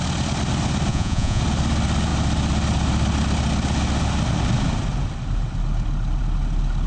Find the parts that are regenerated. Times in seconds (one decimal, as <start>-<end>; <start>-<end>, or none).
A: 0.9-1.4